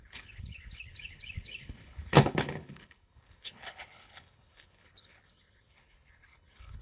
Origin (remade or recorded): remade